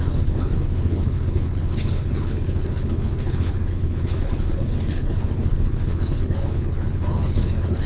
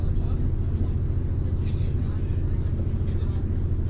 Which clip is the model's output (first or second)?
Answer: first